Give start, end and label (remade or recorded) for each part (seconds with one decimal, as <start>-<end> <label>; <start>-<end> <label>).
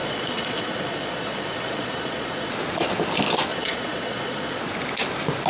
0.0-2.5 remade; 2.5-3.5 recorded; 3.5-4.6 remade; 4.6-5.5 recorded